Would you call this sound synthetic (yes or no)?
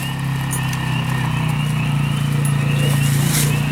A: no